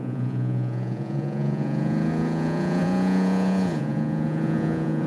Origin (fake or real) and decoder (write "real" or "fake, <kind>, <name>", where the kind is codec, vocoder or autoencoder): fake, vocoder, Vocos